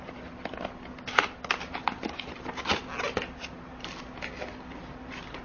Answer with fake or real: real